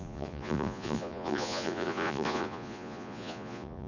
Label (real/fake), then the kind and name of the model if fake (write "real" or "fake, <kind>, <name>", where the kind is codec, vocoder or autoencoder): fake, vocoder, Vocos